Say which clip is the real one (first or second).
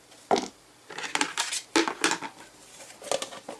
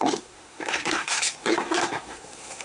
first